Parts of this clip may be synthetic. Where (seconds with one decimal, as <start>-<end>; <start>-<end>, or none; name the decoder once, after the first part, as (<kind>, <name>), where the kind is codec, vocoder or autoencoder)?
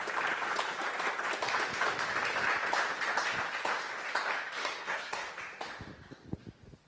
4.6-5.3 (codec, SNAC)